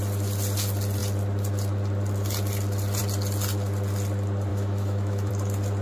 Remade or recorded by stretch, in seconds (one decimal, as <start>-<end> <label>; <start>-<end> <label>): 0.0-4.5 recorded; 4.5-5.3 remade; 5.3-5.8 recorded